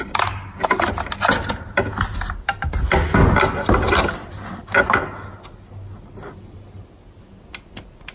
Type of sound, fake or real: real